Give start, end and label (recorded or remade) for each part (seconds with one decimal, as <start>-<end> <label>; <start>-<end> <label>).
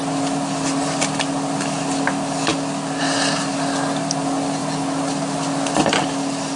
0.0-6.6 recorded